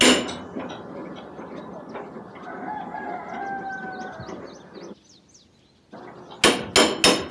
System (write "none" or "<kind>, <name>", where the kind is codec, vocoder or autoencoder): none